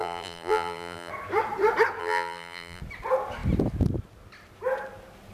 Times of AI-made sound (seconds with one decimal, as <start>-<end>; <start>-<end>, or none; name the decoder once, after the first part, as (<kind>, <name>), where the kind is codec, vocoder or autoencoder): 0.0-1.1 (vocoder, BigVGAN v2); 2.0-2.8